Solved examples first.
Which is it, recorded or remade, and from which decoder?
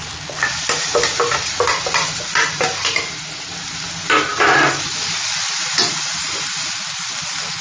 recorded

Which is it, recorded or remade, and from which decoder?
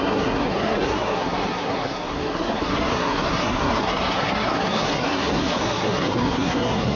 remade, codec, SNAC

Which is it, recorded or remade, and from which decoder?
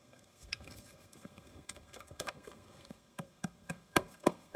remade, codec, SNAC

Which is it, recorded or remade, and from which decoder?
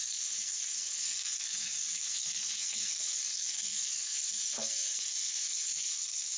remade, codec, SNAC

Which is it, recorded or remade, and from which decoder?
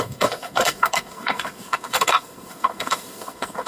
remade, codec, SNAC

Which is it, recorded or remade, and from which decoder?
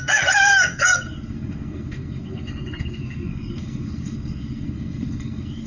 remade, codec, SNAC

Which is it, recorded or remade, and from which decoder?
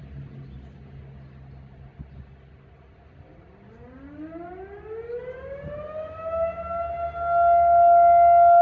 recorded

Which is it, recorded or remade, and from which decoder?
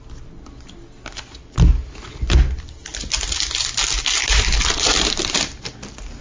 recorded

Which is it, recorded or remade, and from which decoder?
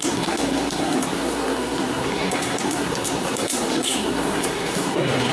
remade, codec, SNAC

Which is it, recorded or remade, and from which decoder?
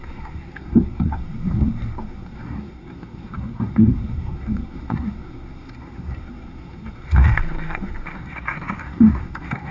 remade, codec, SNAC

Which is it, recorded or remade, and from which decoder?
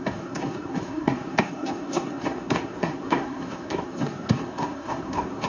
remade, codec, SNAC